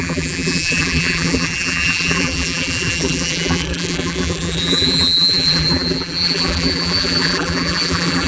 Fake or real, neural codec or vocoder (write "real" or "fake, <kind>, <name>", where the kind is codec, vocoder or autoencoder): fake, vocoder, BigVGAN v2